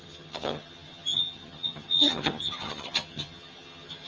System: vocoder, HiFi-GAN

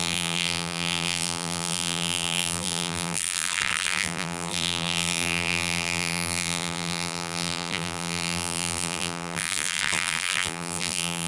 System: vocoder, BigVGAN v2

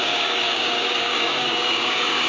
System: codec, DAC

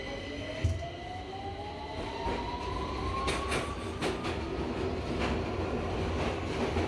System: none